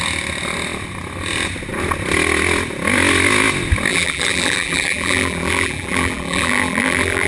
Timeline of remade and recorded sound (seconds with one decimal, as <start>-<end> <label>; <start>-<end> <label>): 0.0-3.9 recorded; 3.9-7.3 remade